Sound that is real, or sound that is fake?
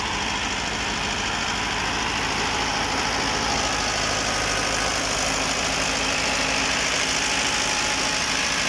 fake